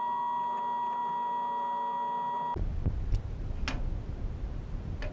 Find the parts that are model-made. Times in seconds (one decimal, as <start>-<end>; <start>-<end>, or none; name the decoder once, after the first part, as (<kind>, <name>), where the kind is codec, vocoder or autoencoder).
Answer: none